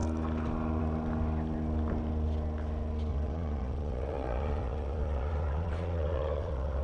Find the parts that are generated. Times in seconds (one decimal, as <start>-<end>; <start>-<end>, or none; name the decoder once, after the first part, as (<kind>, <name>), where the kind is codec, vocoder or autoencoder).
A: 3.1-6.8 (vocoder, Vocos)